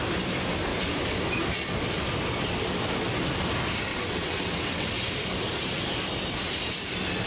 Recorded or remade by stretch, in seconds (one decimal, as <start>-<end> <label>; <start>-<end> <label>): 0.0-3.9 recorded; 3.9-4.9 remade; 4.9-7.3 recorded